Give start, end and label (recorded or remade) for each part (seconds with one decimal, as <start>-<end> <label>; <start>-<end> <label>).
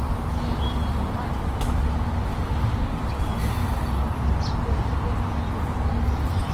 0.0-2.3 recorded; 2.3-3.1 remade; 3.1-6.5 recorded